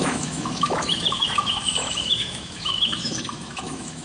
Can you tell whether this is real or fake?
fake